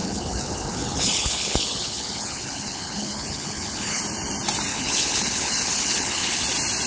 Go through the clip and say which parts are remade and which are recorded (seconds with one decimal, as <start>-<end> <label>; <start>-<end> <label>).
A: 0.0-4.0 remade; 4.0-4.7 recorded; 4.7-6.4 remade; 6.4-6.9 recorded